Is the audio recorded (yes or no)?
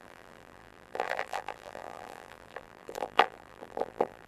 no